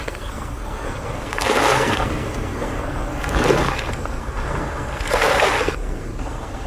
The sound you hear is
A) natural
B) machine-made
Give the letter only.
B